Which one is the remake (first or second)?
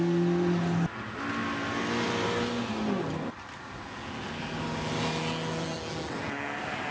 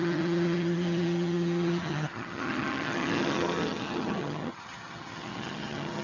second